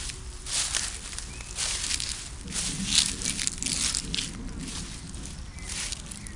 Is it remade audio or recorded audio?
recorded